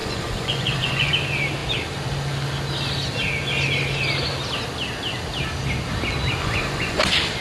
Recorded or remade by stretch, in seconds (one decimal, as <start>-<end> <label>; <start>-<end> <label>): 0.0-1.1 remade; 1.1-6.4 recorded; 6.4-7.0 remade; 7.0-7.4 recorded